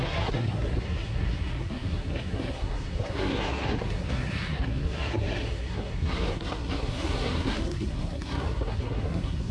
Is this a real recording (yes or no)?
no